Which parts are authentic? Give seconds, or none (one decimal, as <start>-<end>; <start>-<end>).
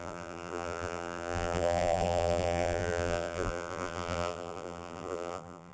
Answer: none